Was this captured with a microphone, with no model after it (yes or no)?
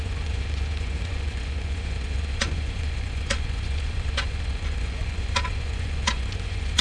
no